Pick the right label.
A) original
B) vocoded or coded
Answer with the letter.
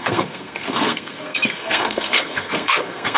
B